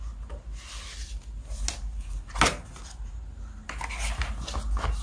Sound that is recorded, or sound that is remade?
recorded